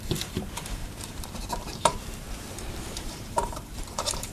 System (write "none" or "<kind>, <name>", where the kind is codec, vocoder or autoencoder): vocoder, BigVGAN v2